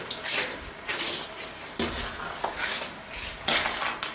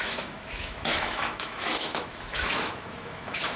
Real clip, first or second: first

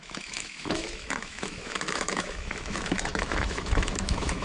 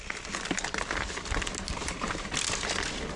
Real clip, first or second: second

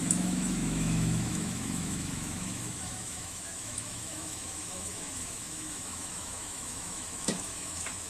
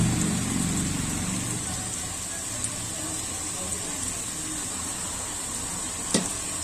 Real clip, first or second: second